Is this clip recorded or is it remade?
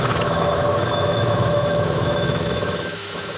remade